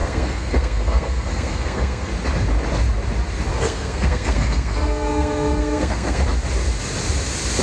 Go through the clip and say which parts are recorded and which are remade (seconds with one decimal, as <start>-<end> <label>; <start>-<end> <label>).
0.0-2.1 remade; 2.1-3.5 recorded; 3.5-6.2 remade; 6.2-7.6 recorded